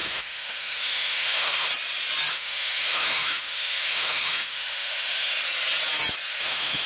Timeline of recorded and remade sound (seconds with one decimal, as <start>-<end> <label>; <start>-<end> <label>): 0.0-1.7 remade; 1.7-2.3 recorded; 2.3-5.3 remade; 5.3-6.3 recorded; 6.3-6.9 remade